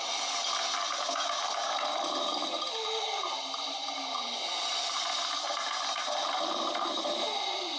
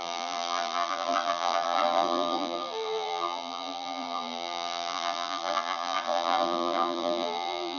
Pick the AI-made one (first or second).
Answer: second